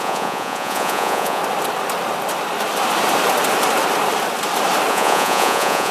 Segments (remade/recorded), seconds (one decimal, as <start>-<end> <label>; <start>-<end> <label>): 0.0-1.4 remade; 1.4-4.9 recorded; 4.9-5.9 remade